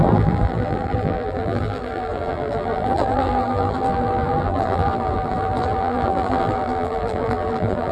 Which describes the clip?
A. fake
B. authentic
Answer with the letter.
A